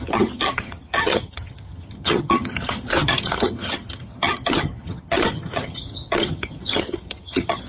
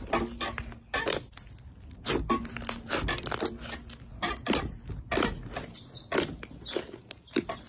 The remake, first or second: first